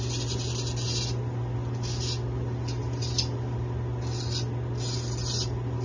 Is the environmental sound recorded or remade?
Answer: recorded